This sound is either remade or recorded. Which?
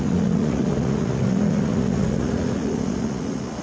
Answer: remade